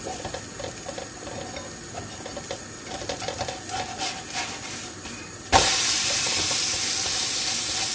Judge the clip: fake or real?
real